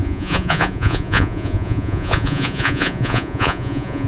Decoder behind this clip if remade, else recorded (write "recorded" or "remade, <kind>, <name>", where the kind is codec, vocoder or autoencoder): remade, vocoder, Vocos